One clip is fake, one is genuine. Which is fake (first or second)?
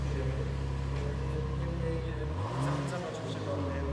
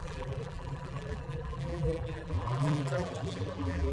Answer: second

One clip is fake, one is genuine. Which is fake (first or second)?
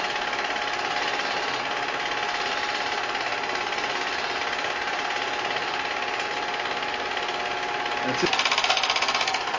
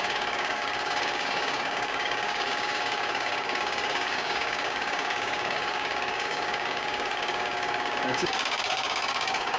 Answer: second